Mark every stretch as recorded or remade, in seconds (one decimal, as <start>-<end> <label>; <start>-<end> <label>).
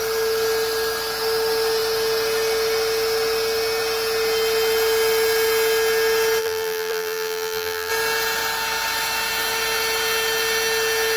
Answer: 0.0-6.4 recorded; 6.4-7.9 remade; 7.9-11.2 recorded